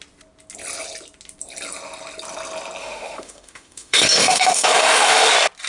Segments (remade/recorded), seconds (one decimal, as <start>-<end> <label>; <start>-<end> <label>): 0.0-2.8 recorded; 2.8-5.3 remade; 5.3-5.7 recorded